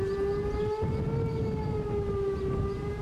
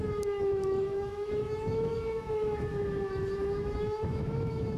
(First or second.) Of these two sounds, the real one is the first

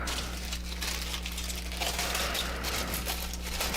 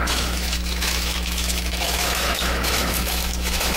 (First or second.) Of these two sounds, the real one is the first